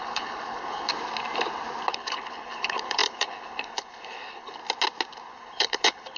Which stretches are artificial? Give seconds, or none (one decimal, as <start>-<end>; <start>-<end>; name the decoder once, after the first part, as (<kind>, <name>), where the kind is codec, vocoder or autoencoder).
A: 0.0-0.9 (codec, HILCodec); 1.9-4.6; 5.3-6.2